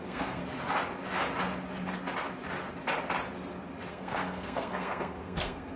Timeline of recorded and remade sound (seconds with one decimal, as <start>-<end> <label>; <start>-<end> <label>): 0.0-0.4 remade; 0.4-3.9 recorded; 3.9-5.8 remade